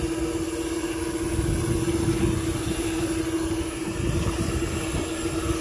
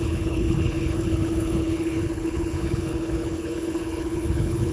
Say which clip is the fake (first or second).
second